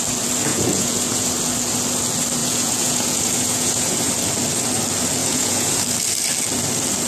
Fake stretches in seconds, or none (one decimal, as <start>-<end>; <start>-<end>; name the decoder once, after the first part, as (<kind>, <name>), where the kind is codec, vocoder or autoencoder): 0.5-1.3 (vocoder, Vocos); 2.4-4.1; 5.2-5.8